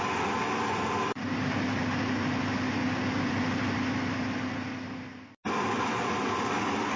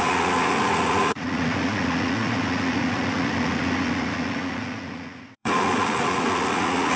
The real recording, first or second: first